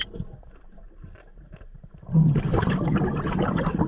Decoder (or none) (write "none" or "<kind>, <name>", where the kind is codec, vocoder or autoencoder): vocoder, BigVGAN v2